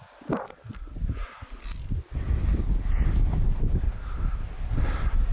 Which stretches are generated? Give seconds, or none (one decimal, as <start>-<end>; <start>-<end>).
1.2-2.5; 3.9-4.8

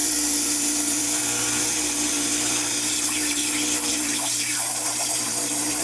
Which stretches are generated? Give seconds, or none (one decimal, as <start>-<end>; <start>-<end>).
0.0-3.4; 3.9-5.8

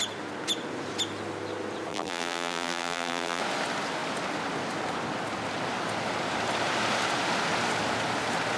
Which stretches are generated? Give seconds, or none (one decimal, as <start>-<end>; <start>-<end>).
1.9-3.4

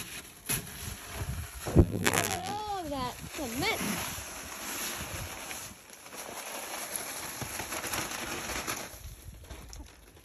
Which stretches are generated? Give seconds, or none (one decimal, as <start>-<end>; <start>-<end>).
1.8-2.6

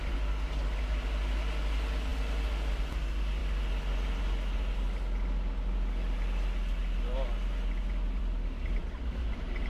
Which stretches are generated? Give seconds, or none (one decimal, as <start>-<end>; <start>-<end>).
8.8-9.7

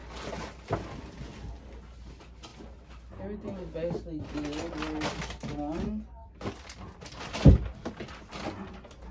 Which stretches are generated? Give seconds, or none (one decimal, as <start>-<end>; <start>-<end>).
6.2-7.9

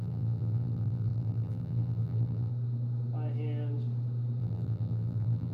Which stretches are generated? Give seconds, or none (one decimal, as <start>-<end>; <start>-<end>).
0.0-2.5; 4.4-5.5